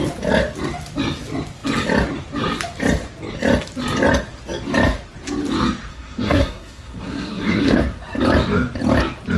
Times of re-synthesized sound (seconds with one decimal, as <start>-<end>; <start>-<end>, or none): 5.9-8.0